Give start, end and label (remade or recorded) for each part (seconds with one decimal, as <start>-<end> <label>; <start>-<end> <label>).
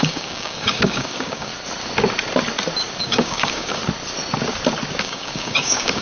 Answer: 0.0-1.5 remade; 1.5-3.0 recorded; 3.0-3.8 remade; 3.8-5.0 recorded; 5.0-6.0 remade